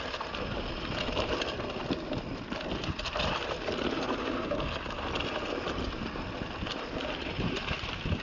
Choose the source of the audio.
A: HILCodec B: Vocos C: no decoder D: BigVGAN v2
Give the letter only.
C